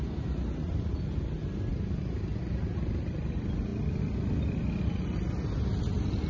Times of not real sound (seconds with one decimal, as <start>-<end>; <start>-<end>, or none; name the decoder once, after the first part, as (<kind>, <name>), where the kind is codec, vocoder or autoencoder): none